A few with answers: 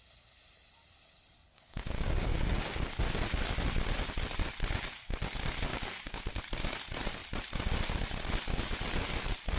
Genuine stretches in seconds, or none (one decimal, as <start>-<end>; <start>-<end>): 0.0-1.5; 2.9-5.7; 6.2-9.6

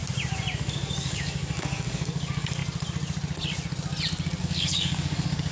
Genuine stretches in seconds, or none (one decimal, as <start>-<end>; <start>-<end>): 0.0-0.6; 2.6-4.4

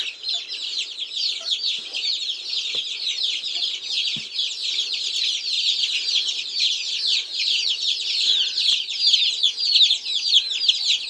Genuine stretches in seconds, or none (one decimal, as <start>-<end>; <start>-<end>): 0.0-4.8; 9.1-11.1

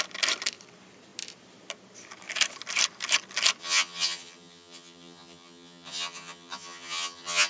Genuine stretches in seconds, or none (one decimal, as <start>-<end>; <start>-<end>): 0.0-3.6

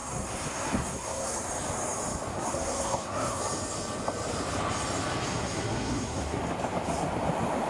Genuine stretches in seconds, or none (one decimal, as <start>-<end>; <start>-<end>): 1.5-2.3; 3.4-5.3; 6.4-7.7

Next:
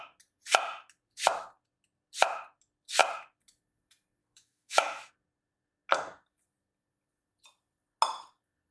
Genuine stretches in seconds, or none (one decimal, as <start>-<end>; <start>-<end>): 0.0-4.2; 5.1-8.7

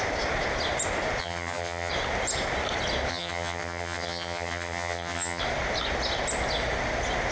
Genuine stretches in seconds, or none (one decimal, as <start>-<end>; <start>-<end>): 0.0-1.2; 1.9-3.1; 5.4-7.3

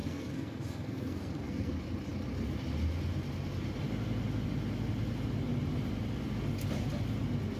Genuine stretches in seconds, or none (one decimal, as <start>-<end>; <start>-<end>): 1.7-7.6